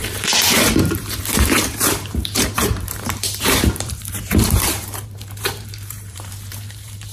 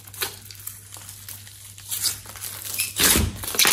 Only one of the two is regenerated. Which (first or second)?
first